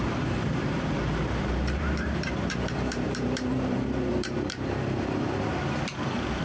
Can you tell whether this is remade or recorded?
remade